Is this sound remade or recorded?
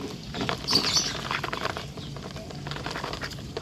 recorded